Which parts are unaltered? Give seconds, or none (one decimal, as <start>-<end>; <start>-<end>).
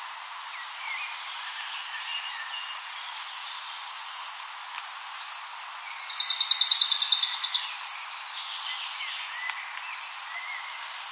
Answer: 0.0-2.1; 4.7-11.1